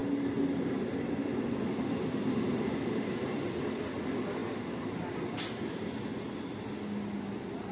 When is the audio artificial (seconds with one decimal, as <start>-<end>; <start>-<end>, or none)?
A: none